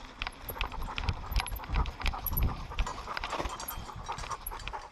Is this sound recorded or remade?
recorded